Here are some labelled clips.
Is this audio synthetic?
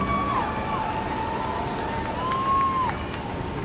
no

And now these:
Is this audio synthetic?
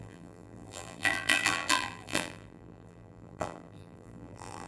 yes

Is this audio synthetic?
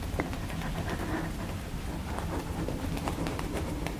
no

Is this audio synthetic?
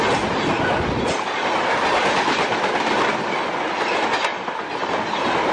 no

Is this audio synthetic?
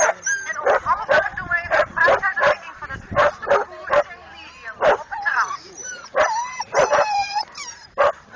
yes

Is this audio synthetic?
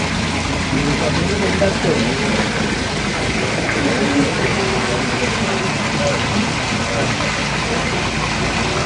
no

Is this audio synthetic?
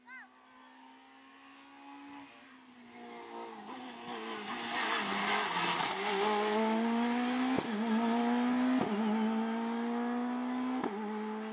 no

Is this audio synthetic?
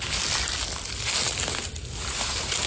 no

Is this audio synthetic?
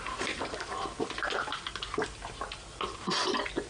no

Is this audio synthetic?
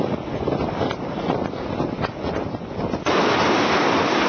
no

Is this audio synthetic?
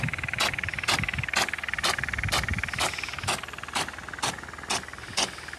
no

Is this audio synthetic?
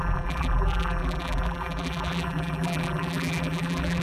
yes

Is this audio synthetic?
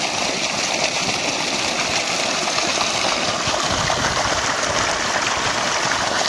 no